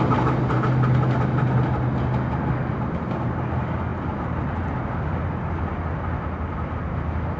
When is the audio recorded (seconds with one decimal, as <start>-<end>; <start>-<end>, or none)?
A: 0.0-7.4